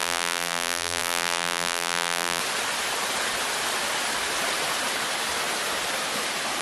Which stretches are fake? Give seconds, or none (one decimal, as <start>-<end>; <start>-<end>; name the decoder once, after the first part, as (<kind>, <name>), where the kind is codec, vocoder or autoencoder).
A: 0.0-2.4 (vocoder, BigVGAN v2)